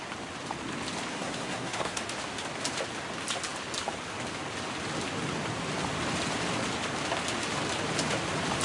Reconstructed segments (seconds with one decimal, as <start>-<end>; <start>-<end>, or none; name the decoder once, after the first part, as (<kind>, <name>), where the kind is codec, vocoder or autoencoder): 1.1-2.0 (codec, SNAC)